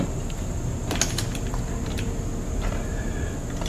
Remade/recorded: recorded